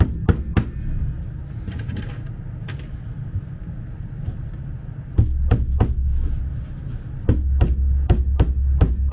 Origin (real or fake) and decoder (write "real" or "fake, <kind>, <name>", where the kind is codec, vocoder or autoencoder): real